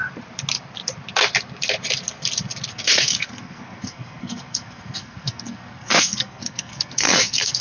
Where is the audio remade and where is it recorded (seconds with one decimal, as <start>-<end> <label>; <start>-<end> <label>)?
0.0-2.7 recorded; 2.7-7.6 remade